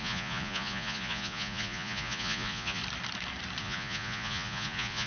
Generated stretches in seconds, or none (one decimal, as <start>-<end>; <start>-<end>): 0.0-2.8; 3.6-5.1